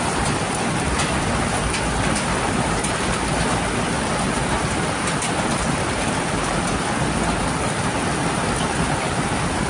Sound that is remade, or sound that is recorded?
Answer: recorded